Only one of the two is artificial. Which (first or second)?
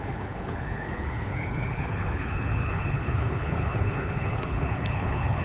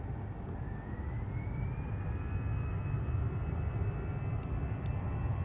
first